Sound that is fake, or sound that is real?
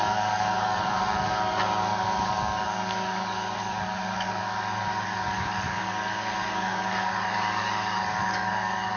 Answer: fake